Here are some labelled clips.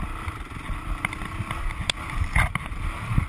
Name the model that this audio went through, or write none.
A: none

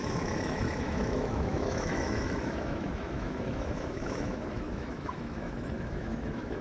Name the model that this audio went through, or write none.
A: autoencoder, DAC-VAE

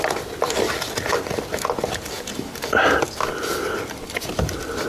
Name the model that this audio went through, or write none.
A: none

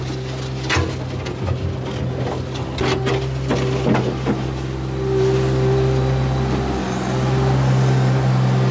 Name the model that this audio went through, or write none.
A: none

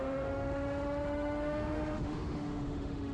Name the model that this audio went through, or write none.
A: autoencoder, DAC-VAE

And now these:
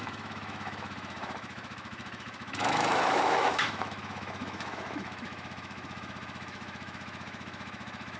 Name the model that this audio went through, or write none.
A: autoencoder, DAC-VAE